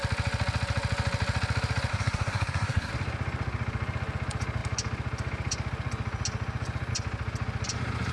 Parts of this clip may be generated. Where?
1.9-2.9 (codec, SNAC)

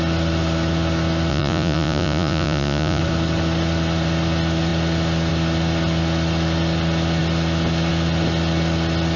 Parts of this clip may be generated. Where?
1.3-3.0 (vocoder, Vocos)

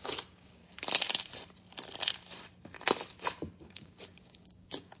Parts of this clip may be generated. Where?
0.0-0.6 (codec, DAC); 3.6-5.0

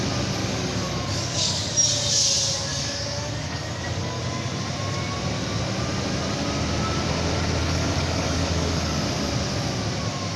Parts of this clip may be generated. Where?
0.4-1.7 (codec, DAC); 2.7-4.2; 7.6-9.0

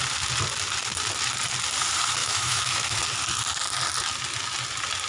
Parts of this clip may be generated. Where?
2.2-3.0 (autoencoder, DAC-VAE)

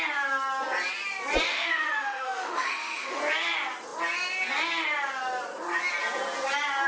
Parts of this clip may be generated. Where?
1.5-3.2 (autoencoder, DAC-VAE)

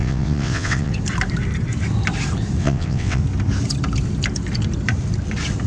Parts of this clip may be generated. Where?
0.0-0.9 (vocoder, WaveNeXt); 2.6-3.2